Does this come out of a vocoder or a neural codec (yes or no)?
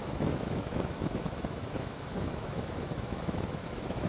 yes